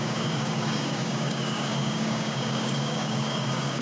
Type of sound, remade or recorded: remade